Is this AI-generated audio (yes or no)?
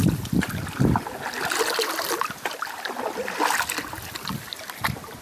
no